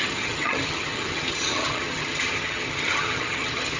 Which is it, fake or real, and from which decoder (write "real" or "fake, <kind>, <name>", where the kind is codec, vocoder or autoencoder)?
fake, vocoder, HiFi-GAN